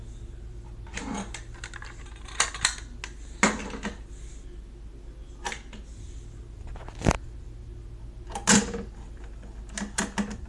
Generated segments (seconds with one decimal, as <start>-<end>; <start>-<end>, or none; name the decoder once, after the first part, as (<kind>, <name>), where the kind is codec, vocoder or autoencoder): none